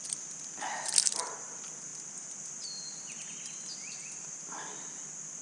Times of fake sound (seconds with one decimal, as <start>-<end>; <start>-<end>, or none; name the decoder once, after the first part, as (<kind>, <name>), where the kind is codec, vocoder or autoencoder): none